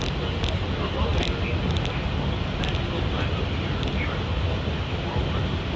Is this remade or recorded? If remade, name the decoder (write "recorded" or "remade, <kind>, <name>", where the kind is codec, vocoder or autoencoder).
recorded